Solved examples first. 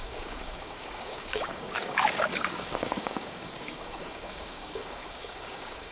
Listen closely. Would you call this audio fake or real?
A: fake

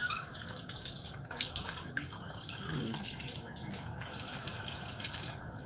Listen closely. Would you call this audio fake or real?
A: fake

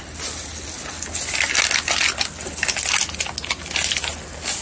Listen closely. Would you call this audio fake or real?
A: real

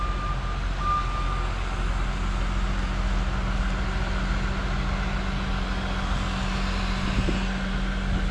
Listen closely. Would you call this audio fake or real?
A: real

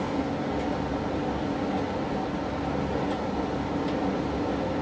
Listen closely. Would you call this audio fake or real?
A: real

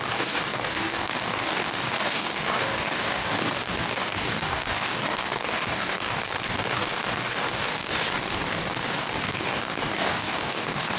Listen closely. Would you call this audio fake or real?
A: fake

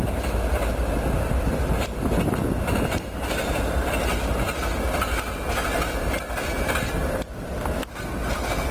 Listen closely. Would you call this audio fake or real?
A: real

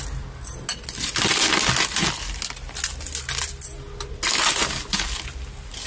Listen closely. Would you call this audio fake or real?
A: real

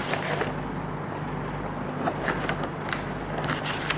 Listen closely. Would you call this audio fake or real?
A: real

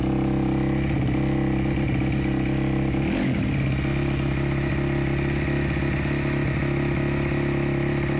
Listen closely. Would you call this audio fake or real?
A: real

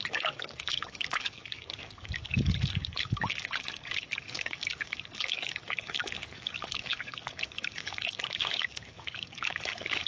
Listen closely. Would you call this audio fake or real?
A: fake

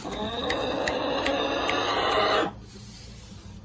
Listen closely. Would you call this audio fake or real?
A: real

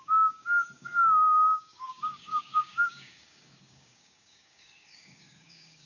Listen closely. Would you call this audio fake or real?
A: fake